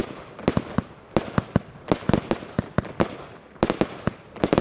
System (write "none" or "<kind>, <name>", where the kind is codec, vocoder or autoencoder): none